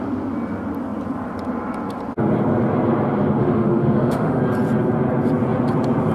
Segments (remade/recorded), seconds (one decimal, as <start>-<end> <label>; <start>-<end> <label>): 0.0-3.4 recorded; 3.4-4.4 remade; 4.4-6.1 recorded